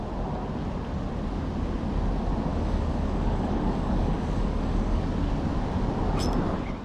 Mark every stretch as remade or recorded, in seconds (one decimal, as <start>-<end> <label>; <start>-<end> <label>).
0.0-2.5 recorded; 2.5-5.0 remade; 5.0-6.8 recorded